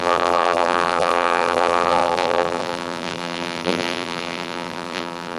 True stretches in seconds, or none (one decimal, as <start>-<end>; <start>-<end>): none